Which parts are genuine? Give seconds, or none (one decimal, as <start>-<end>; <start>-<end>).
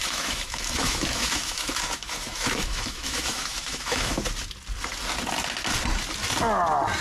4.2-7.0